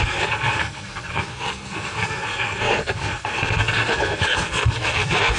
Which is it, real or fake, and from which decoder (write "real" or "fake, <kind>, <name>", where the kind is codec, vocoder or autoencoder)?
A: fake, codec, SNAC